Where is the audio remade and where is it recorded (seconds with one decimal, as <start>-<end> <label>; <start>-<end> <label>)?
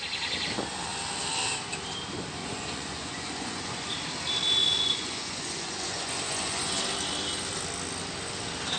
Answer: 0.0-2.4 recorded; 2.4-3.9 remade; 3.9-4.6 recorded; 4.6-6.8 remade; 6.8-8.8 recorded